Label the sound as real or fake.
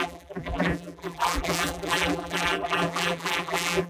fake